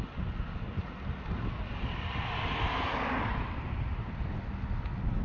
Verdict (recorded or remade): recorded